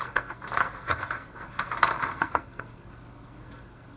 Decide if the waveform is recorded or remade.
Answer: remade